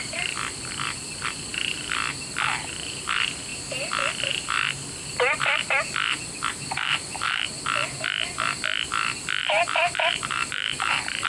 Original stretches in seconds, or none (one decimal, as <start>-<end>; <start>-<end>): 0.0-6.5; 7.5-9.4

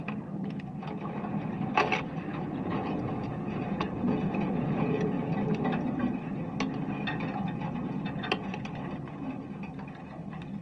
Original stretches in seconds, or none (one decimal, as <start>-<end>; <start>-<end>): 0.0-2.3; 5.3-10.6

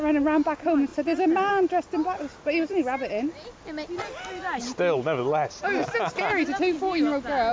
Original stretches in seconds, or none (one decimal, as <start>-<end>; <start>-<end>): 0.0-7.5

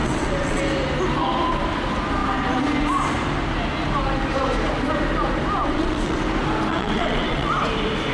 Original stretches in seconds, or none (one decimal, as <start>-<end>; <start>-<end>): 0.6-5.6; 6.2-6.7; 7.5-8.1

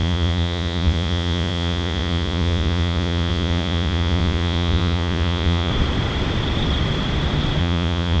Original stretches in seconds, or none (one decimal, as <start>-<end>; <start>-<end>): 5.7-7.6

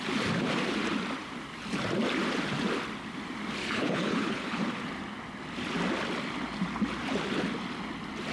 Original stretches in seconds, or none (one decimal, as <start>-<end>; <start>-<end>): 0.0-3.6; 4.6-8.3